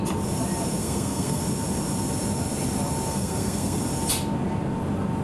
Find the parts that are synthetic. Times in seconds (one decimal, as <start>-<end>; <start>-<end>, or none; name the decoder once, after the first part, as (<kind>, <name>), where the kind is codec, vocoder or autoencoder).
0.8-1.4 (codec, SNAC); 3.1-3.8